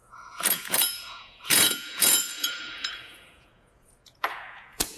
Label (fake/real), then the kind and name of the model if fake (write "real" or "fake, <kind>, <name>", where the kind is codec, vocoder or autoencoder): fake, vocoder, Vocos